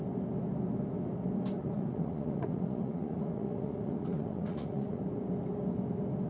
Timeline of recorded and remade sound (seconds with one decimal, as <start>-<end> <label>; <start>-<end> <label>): 0.0-1.6 recorded; 1.6-5.0 remade; 5.0-6.3 recorded